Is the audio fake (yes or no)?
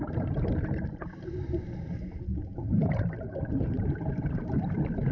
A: yes